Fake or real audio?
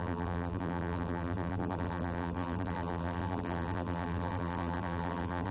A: fake